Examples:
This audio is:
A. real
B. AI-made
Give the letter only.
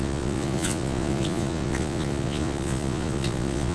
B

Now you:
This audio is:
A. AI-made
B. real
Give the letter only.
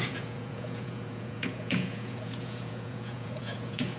A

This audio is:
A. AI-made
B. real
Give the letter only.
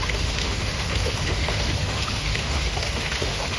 A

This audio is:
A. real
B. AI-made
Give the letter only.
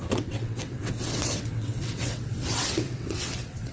B